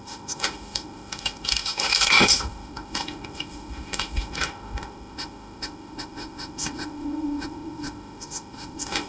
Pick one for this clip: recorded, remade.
remade